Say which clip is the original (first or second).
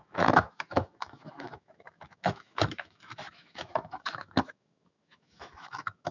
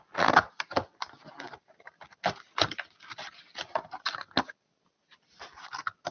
second